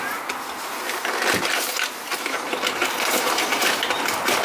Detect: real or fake real